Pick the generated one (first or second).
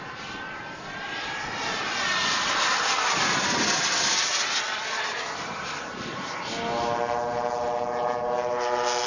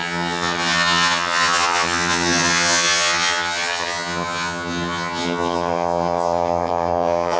second